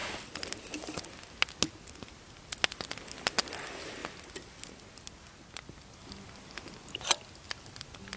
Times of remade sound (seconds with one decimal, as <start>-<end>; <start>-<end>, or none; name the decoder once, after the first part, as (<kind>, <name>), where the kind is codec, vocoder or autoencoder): none